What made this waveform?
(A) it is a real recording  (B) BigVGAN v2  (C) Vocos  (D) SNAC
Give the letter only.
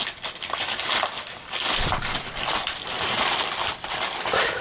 B